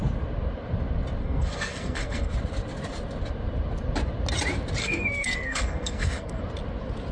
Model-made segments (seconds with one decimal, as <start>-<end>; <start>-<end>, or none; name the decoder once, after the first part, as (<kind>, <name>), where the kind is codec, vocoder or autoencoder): 1.2-2.3 (codec, SNAC); 4.8-6.4